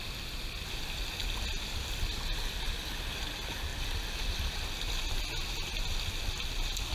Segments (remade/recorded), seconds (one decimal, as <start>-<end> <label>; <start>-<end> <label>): 0.0-1.2 recorded; 1.2-2.8 remade; 2.8-6.9 recorded